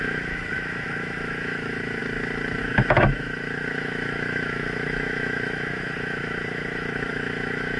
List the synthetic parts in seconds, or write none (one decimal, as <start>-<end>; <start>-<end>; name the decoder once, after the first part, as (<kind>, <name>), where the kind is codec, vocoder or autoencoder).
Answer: 0.0-2.0 (autoencoder, DAC-VAE); 2.6-7.8